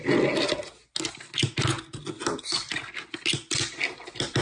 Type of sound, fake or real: real